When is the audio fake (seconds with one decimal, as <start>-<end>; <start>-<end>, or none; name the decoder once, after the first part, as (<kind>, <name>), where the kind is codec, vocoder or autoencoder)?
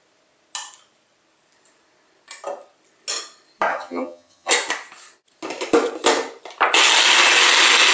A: 3.7-4.5 (vocoder, HiFi-GAN)